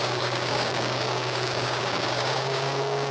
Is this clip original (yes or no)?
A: no